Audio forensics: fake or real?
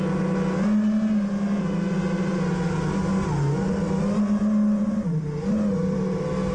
real